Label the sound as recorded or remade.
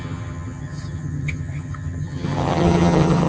remade